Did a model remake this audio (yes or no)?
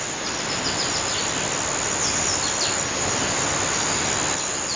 no